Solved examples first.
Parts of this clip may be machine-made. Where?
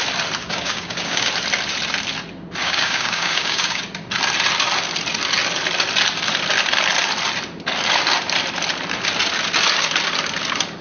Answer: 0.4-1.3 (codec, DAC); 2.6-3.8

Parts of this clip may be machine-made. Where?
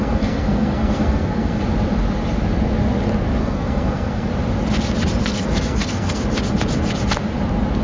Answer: 0.0-1.6 (codec, SNAC); 3.4-4.3; 5.2-6.2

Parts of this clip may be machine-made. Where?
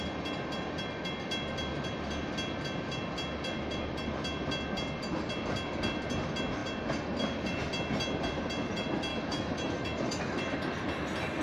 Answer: 9.1-10.4 (autoencoder, DAC-VAE)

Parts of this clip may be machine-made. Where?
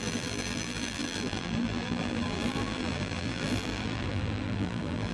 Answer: 0.0-5.1 (vocoder, BigVGAN v2)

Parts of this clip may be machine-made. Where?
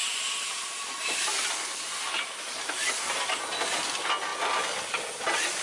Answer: 0.0-3.4 (vocoder, BigVGAN v2); 4.3-4.9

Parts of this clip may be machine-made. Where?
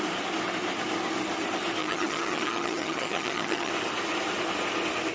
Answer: 1.8-3.7 (vocoder, HiFi-GAN)